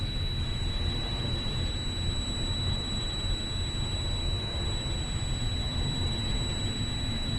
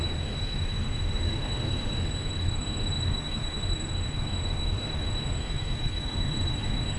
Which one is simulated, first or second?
second